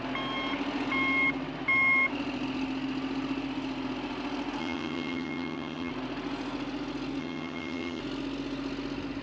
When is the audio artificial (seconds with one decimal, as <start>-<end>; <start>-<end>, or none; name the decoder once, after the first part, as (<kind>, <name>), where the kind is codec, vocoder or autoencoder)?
4.6-5.9 (vocoder, HiFi-GAN); 7.2-8.0